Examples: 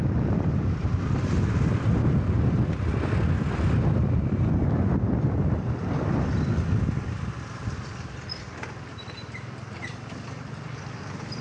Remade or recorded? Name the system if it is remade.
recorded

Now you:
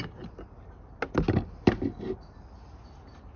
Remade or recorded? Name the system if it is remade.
recorded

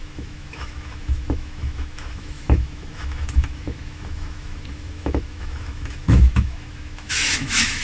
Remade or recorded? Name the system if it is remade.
remade, autoencoder, DAC-VAE